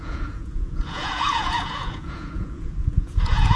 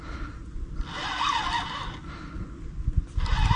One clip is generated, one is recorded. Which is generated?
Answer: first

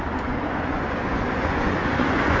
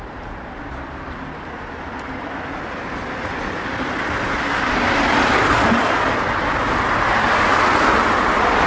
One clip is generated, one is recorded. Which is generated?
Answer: first